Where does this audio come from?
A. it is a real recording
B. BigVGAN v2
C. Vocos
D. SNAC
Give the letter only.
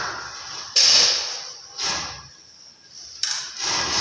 A